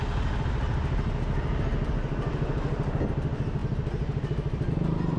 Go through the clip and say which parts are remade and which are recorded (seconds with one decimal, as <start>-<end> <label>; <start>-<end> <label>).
0.0-5.2 recorded